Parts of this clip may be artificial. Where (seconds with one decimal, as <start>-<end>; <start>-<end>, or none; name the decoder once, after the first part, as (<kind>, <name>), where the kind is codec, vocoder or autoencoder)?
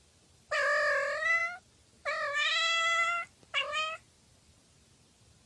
none